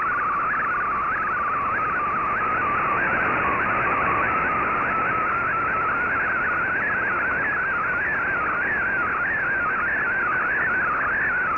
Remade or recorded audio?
recorded